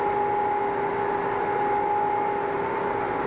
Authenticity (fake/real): real